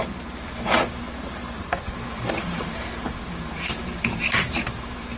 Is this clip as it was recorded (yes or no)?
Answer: no